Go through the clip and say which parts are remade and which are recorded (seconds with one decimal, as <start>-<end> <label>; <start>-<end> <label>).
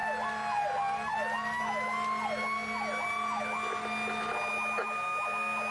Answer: 0.0-5.7 recorded